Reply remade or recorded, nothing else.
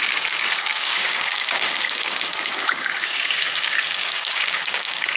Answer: remade